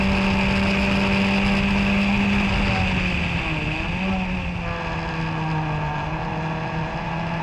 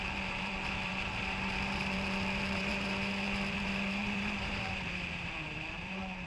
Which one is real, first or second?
first